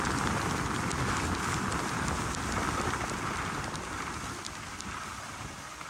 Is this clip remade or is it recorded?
recorded